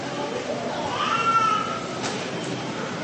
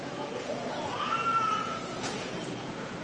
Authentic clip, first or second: first